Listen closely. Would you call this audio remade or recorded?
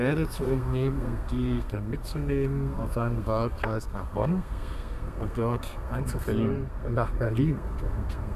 remade